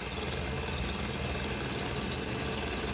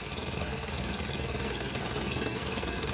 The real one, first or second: first